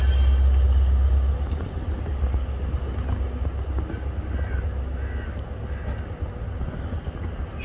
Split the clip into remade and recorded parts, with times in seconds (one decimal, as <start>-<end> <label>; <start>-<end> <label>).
0.0-7.6 recorded